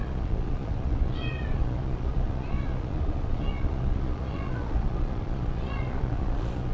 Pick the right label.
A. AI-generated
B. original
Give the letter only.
A